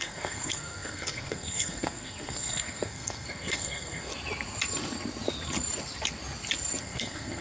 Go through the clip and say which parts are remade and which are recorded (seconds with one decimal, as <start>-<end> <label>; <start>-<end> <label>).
0.0-4.1 remade; 4.1-6.8 recorded; 6.8-7.4 remade